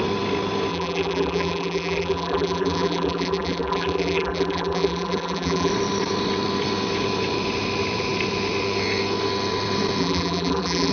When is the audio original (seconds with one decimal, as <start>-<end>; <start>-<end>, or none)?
0.0-0.7; 5.7-10.0